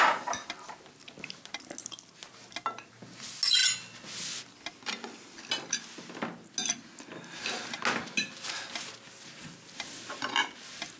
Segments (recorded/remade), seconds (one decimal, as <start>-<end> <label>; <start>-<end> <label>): 0.0-11.0 recorded